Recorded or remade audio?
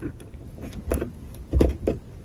remade